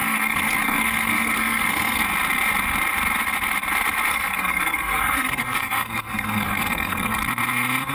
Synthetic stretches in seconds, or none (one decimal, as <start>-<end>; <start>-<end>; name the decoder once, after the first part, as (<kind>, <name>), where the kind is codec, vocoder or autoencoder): 0.0-2.0 (codec, SNAC); 4.1-7.2

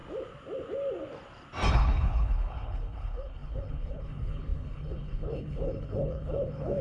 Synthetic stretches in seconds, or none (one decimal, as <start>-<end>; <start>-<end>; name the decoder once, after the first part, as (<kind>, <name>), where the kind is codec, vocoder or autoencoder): 1.7-6.8 (codec, HILCodec)

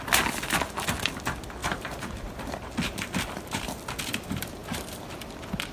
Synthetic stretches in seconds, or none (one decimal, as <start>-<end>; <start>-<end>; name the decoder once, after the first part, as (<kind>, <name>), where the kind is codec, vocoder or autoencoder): 1.6-2.5 (vocoder, BigVGAN v2); 4.6-5.2

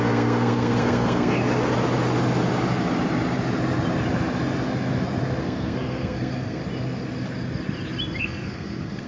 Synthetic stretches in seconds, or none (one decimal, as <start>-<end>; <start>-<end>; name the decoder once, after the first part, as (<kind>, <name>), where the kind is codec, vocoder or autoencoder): 0.0-1.4 (codec, SNAC); 5.4-6.6; 8.2-9.1

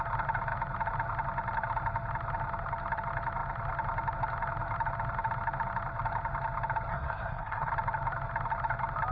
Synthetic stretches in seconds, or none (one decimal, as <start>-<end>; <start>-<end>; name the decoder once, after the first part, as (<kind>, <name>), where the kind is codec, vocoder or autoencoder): 6.9-7.7 (codec, SNAC)

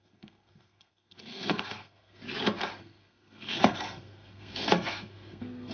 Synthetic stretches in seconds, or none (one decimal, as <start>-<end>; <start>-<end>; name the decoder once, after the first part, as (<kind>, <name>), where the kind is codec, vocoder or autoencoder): 0.0-2.2 (codec, SNAC); 2.8-5.7